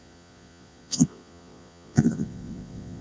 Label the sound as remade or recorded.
remade